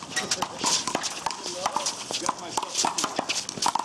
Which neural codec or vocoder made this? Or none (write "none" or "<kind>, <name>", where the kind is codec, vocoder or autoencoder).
none